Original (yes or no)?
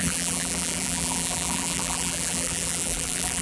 no